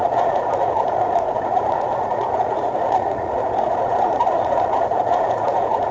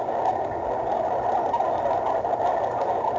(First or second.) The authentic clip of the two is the second